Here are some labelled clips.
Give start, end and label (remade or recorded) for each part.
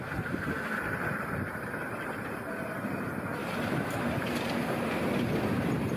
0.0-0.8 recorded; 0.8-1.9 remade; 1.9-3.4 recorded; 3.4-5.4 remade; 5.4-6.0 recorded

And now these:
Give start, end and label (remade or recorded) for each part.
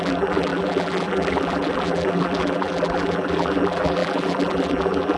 0.0-5.2 remade